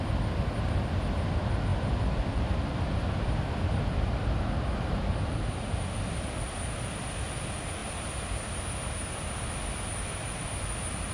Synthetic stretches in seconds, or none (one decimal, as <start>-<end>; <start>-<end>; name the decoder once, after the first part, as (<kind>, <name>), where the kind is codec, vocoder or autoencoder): 1.7-3.8 (vocoder, BigVGAN v2)